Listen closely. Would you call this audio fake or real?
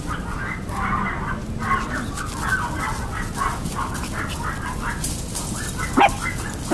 real